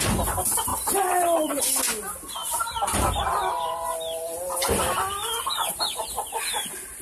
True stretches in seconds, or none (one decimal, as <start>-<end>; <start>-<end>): 0.0-0.7; 1.6-7.0